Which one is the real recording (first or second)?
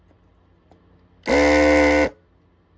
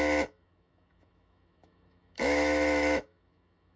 first